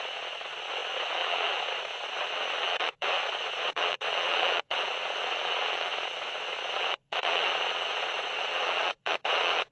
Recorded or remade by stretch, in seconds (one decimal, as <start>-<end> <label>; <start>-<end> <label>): 0.0-9.7 remade